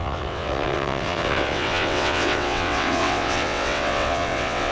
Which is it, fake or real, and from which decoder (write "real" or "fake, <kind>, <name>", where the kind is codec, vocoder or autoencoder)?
fake, vocoder, WaveNeXt